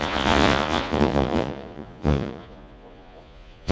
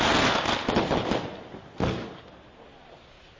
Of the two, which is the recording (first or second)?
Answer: second